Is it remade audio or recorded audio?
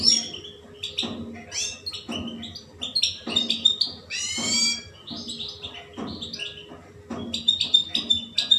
recorded